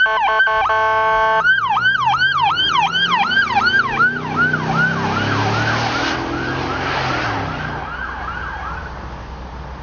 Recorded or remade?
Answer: recorded